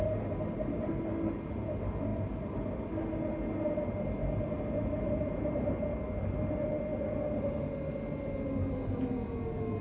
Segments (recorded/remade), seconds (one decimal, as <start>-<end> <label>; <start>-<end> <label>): 0.0-9.8 recorded

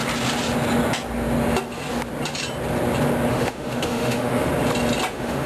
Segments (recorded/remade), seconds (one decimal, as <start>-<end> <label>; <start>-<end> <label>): 0.0-3.3 recorded; 3.3-4.5 remade; 4.5-5.1 recorded; 5.1-5.5 remade